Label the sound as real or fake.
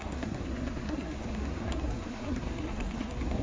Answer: fake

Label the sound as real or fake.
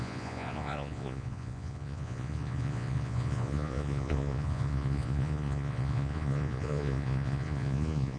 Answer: fake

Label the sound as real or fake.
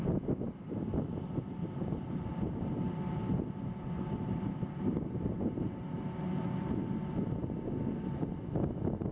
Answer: real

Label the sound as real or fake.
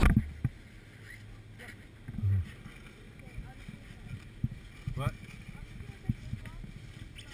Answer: real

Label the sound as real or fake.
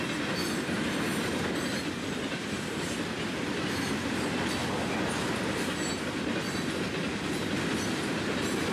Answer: real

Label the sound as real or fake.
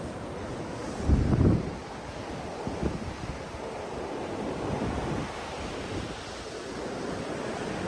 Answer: real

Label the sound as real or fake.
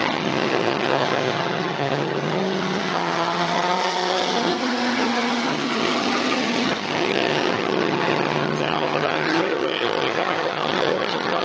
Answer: fake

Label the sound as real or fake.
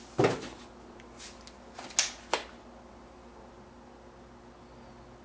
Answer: real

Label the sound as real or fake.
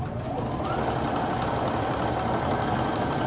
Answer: real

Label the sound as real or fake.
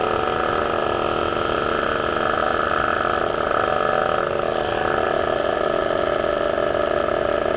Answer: real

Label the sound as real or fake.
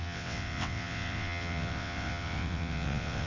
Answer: fake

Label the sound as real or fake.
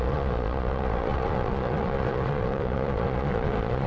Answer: fake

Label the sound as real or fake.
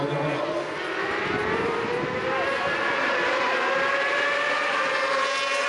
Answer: real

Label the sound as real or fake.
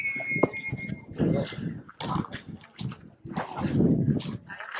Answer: real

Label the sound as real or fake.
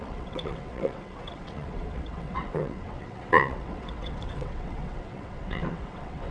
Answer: fake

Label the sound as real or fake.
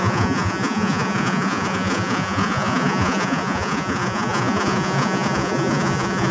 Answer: fake